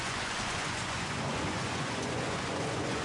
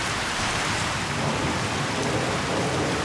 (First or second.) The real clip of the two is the second